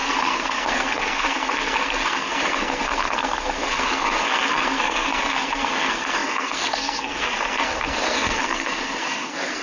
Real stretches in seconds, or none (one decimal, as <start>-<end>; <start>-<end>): none